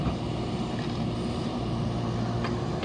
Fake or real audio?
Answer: real